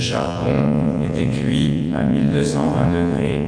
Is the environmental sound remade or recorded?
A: remade